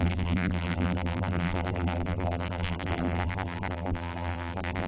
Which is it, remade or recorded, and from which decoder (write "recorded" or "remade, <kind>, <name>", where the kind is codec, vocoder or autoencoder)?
remade, vocoder, BigVGAN v2